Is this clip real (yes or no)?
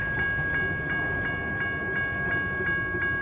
yes